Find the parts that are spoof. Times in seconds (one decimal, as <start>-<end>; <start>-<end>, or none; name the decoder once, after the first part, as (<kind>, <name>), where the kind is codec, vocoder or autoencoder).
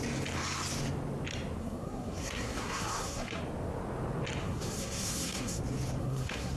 1.6-3.4 (codec, SNAC); 4.4-5.6; 6.0-6.6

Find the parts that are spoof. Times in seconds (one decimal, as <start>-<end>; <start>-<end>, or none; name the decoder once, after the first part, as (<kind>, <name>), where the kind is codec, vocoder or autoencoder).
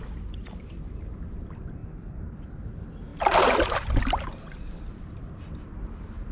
0.6-1.8 (vocoder, BigVGAN v2); 2.5-6.3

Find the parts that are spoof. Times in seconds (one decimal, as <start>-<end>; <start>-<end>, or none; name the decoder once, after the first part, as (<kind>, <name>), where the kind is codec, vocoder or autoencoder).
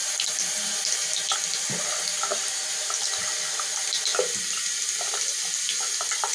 none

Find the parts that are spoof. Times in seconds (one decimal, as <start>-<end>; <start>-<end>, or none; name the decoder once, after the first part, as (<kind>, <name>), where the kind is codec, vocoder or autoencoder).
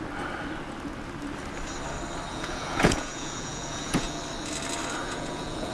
2.3-4.2 (vocoder, Vocos); 5.0-5.7